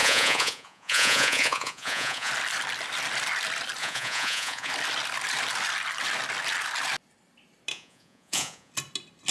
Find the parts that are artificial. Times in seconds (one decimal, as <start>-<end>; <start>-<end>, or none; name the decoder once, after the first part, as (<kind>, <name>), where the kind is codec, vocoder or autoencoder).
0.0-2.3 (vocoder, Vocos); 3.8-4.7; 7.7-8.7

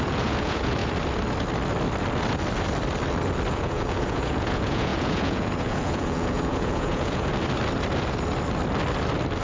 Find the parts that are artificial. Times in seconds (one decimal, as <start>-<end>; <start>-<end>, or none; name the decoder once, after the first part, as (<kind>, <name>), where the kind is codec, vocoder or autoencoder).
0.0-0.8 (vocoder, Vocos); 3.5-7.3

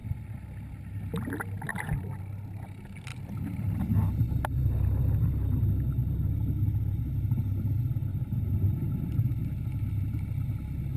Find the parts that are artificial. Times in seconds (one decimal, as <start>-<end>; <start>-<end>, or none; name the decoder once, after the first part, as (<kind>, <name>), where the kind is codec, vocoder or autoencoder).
1.7-2.2 (vocoder, BigVGAN v2); 3.1-3.8; 8.1-9.0

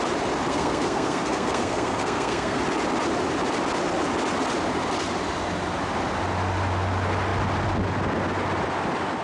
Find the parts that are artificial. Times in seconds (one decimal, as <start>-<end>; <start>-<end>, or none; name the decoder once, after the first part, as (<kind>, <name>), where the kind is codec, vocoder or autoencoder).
0.5-2.6 (codec, SNAC)

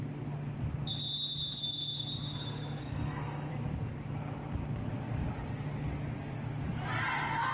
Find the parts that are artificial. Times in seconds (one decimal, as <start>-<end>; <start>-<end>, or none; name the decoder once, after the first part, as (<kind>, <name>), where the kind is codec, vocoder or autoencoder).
2.8-3.5 (codec, SNAC)

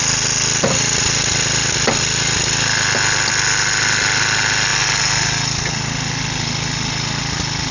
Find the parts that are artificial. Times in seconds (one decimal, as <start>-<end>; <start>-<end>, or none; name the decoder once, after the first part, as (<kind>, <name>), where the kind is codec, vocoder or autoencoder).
none

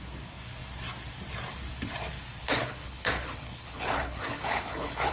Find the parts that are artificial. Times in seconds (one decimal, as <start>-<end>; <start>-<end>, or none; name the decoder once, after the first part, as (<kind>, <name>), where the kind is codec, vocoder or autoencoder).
2.4-5.1 (codec, HILCodec)

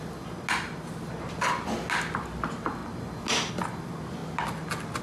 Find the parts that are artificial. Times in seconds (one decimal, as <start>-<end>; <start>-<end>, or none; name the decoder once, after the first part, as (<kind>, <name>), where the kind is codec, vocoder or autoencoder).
none